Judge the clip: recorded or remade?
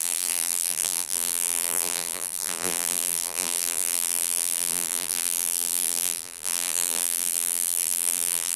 remade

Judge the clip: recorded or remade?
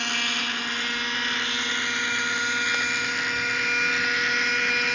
recorded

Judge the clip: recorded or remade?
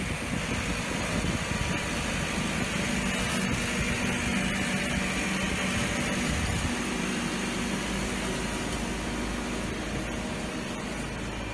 recorded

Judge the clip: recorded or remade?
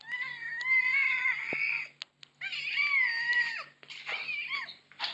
recorded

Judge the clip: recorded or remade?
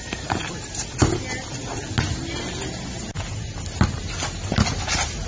recorded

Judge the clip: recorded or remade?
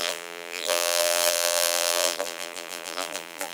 remade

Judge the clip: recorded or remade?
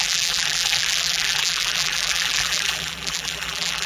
remade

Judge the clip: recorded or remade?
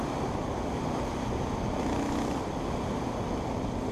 recorded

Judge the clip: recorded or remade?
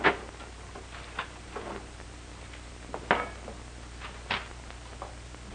recorded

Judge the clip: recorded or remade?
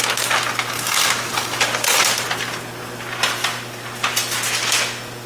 recorded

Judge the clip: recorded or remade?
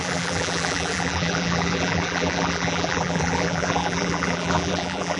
remade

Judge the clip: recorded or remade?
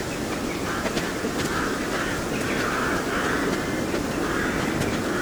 recorded